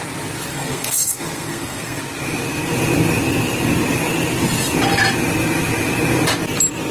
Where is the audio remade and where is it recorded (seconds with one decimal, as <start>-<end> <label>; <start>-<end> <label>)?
0.0-0.5 recorded; 0.5-2.0 remade; 2.0-6.9 recorded